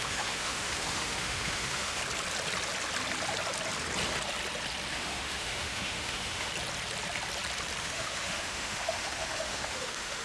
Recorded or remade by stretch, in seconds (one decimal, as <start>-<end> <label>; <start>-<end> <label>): 0.0-2.0 remade; 2.0-4.9 recorded; 4.9-6.5 remade; 6.5-7.8 recorded; 7.8-10.2 remade